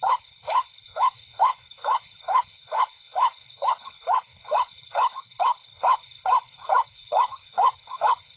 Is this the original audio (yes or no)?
no